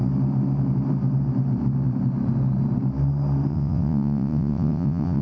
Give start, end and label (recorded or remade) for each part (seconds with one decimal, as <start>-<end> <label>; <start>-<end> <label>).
0.0-3.5 recorded; 3.5-5.2 remade